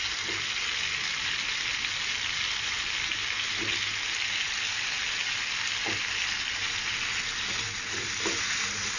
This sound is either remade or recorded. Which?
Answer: recorded